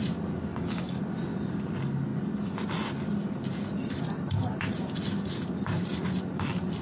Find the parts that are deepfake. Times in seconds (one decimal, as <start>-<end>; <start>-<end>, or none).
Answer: 0.5-1.0